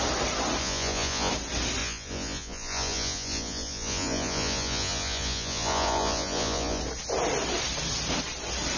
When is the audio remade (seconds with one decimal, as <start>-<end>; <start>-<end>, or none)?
0.6-1.3; 1.8-6.8